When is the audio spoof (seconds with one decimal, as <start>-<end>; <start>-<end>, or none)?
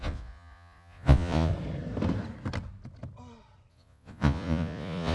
0.0-1.5; 3.7-5.1